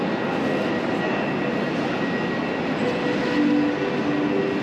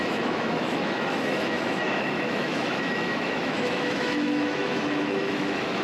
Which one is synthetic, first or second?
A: second